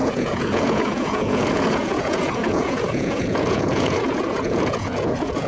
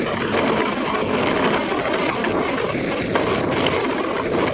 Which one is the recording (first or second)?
second